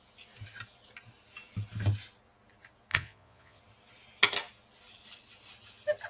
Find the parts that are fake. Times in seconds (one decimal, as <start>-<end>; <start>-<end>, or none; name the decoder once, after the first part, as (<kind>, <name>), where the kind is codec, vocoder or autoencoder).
2.9-3.6 (vocoder, Vocos)